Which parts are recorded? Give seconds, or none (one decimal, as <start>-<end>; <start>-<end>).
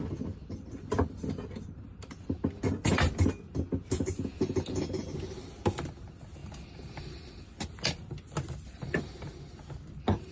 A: 0.0-10.3